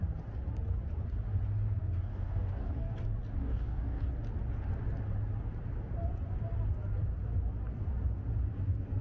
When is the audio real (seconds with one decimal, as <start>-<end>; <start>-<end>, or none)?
0.0-1.8; 2.9-3.4; 4.0-9.0